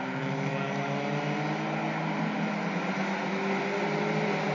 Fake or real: real